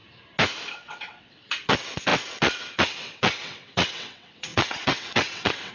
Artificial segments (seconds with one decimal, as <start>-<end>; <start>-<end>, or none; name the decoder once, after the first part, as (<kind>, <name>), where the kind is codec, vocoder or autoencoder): 0.7-5.7 (vocoder, WaveNeXt)